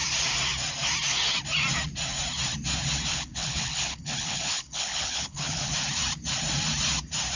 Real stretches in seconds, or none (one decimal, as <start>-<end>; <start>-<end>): 0.0-3.1; 5.7-7.4